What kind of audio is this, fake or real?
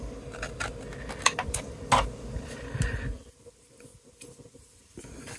real